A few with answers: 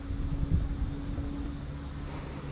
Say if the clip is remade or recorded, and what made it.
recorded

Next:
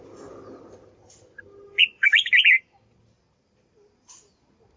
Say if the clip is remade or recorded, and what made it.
recorded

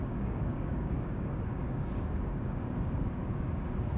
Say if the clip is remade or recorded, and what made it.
remade, codec, DAC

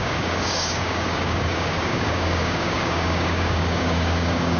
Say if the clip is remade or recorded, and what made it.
remade, codec, DAC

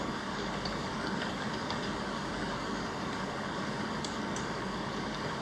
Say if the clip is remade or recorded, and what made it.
remade, codec, DAC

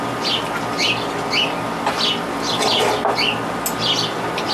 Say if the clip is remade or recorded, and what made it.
recorded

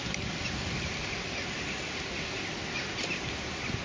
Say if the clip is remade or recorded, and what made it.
recorded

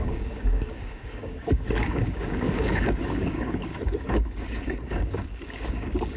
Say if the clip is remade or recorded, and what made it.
remade, codec, DAC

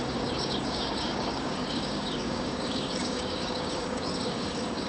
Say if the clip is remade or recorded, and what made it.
remade, codec, DAC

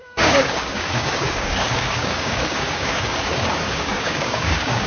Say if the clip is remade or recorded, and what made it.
remade, codec, DAC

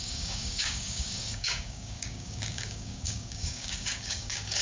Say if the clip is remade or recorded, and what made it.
remade, codec, DAC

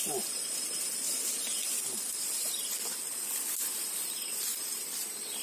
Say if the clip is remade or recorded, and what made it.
recorded